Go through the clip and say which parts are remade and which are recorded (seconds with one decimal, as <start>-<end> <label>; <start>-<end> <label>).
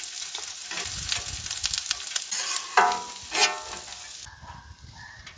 0.0-5.4 recorded